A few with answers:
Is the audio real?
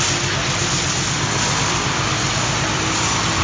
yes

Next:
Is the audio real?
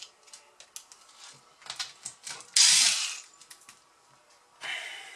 yes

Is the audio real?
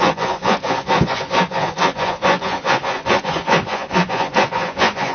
no